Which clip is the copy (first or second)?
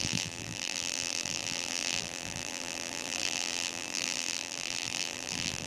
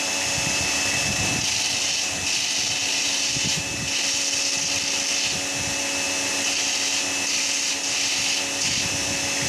first